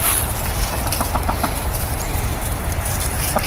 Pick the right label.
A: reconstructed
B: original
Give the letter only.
B